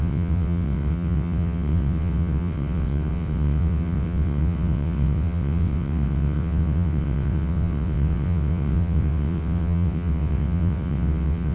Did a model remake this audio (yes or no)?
yes